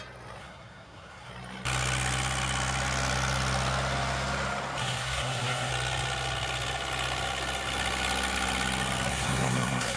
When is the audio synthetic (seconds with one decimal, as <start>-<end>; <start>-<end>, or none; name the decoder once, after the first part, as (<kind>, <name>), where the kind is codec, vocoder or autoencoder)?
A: 0.4-1.3 (codec, SNAC); 4.8-5.7; 9.1-10.0